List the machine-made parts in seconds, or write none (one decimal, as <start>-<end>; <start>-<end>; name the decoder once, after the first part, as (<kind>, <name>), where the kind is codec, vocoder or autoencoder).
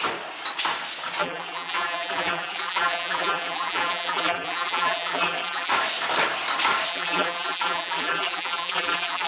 1.2-5.7 (vocoder, BigVGAN v2); 6.9-9.3